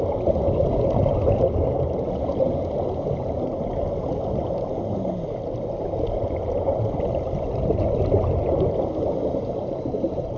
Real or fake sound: real